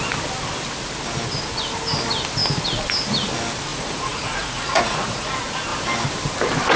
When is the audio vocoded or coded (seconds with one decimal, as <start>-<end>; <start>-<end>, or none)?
3.7-5.3